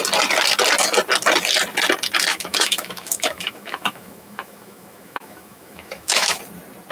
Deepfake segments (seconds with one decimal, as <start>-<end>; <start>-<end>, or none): 2.3-6.4